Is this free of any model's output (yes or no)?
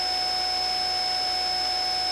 yes